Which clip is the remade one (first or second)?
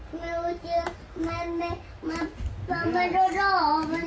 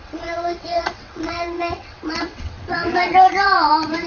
second